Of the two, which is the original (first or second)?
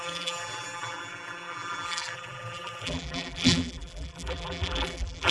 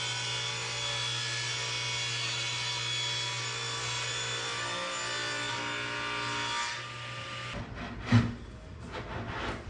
second